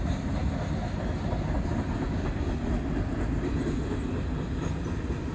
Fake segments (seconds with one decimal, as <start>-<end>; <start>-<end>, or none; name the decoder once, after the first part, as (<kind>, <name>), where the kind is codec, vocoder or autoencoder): none